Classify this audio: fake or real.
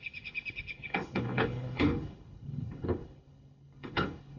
fake